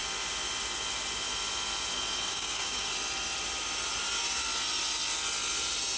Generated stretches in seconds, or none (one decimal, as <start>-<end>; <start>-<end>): 2.3-2.9